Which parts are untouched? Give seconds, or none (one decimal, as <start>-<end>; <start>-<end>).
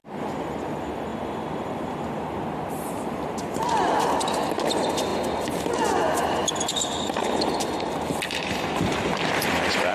0.0-0.7; 1.1-2.9; 5.1-6.0; 6.4-8.4